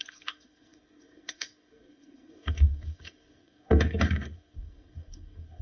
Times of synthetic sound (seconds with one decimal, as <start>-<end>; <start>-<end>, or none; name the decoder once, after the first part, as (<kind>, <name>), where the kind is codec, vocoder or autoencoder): 0.0-5.6 (codec, SNAC)